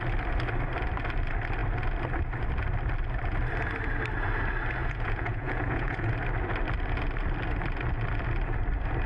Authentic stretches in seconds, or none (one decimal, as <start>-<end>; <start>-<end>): 0.0-4.8; 6.1-9.1